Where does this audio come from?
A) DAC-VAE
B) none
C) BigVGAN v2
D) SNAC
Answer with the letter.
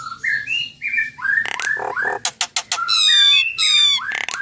B